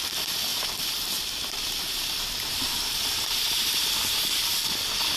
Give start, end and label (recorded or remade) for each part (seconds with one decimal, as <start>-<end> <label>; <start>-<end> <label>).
0.0-5.2 remade